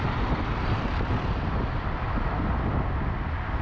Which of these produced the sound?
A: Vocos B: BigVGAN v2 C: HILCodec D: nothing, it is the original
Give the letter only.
D